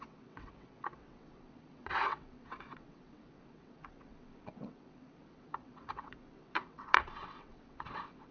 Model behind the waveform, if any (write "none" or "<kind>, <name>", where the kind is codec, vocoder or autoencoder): vocoder, WaveNeXt